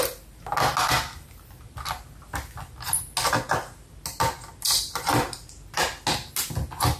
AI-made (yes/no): no